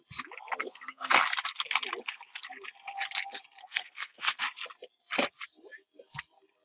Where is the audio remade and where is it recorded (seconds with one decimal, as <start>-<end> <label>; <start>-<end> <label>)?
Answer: 0.0-0.6 recorded; 0.6-1.1 remade; 1.1-3.6 recorded; 3.6-4.4 remade; 4.4-6.6 recorded